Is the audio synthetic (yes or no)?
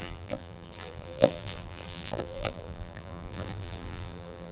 yes